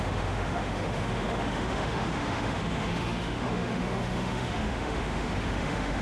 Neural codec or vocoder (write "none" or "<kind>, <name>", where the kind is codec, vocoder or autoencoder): autoencoder, DAC-VAE